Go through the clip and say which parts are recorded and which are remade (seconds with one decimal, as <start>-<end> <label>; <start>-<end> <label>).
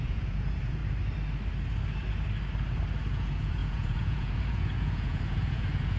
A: 0.0-0.8 remade; 0.8-3.1 recorded; 3.1-6.0 remade